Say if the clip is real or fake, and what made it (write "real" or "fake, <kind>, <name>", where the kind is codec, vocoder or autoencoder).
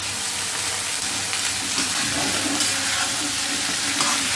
real